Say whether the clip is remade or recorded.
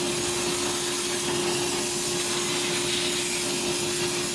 recorded